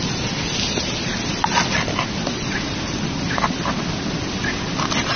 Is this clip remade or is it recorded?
recorded